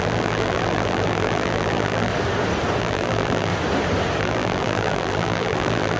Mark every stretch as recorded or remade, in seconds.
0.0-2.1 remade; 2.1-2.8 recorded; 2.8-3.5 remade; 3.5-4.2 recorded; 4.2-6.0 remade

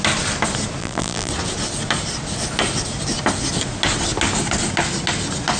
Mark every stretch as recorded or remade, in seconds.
0.0-0.8 recorded; 0.8-1.3 remade; 1.3-5.6 recorded

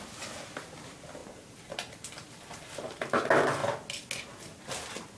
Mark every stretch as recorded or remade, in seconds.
0.0-1.2 recorded; 1.2-3.1 remade; 3.1-5.2 recorded

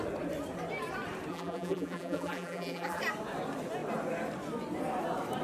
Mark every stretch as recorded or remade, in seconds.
0.0-1.3 recorded; 1.3-3.0 remade; 3.0-5.4 recorded

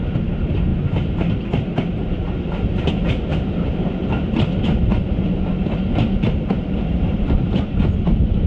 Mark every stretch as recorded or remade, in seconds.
0.0-3.3 recorded; 3.3-3.8 remade; 3.8-6.9 recorded; 6.9-8.5 remade

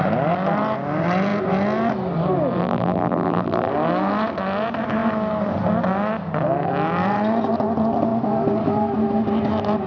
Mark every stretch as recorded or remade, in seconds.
0.0-2.6 recorded; 2.6-3.7 remade; 3.7-9.9 recorded

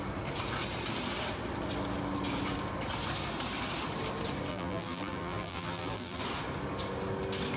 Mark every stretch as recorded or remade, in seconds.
0.0-4.5 recorded; 4.5-6.2 remade; 6.2-7.6 recorded